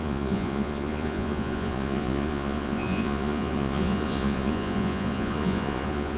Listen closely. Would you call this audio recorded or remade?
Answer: remade